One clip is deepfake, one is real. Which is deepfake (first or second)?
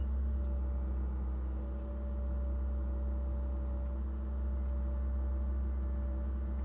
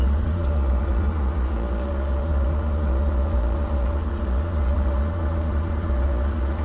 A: second